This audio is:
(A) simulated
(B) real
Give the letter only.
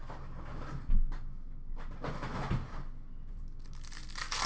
B